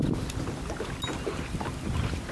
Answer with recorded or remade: recorded